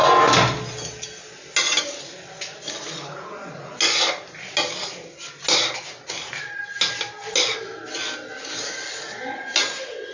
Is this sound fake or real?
real